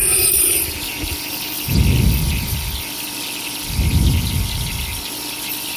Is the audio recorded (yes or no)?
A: yes